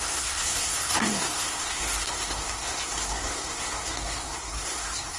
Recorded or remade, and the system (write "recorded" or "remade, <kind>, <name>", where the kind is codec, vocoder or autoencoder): remade, codec, SNAC